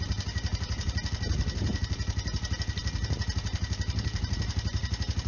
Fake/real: fake